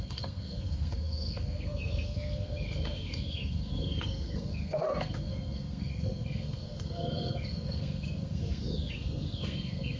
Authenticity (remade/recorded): remade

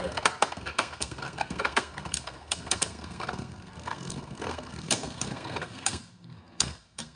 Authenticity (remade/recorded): remade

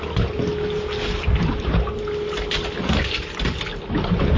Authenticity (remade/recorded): recorded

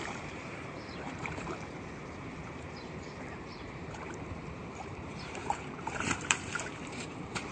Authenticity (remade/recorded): remade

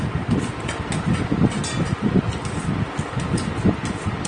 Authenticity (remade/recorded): recorded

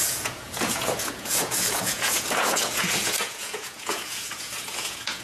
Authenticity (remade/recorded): remade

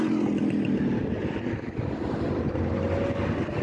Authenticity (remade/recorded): recorded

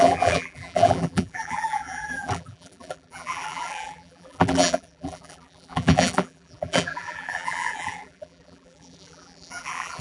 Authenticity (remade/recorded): remade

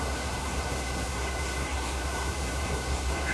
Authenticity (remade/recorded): remade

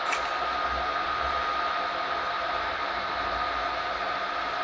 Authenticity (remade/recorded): recorded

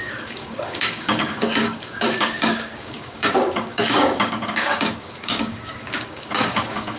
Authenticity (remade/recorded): remade